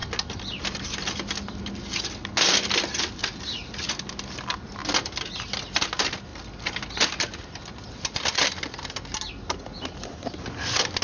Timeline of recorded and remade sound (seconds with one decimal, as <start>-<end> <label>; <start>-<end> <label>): 0.0-11.0 recorded